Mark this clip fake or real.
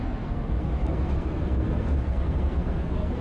fake